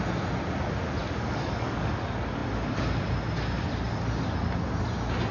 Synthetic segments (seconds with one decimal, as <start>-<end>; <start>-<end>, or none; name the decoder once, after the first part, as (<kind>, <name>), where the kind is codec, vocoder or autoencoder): 1.0-1.9 (codec, DAC)